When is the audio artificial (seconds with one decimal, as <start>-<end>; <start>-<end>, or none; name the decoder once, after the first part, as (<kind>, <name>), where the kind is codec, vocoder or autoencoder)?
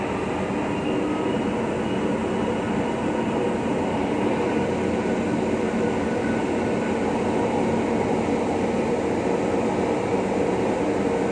10.1-10.8 (vocoder, BigVGAN v2)